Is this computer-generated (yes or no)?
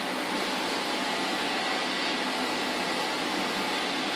no